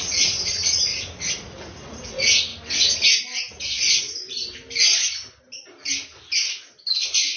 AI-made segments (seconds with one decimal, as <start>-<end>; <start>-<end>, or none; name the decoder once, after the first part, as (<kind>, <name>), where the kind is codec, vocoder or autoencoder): 0.0-0.9 (vocoder, Vocos); 1.8-2.5; 6.9-7.4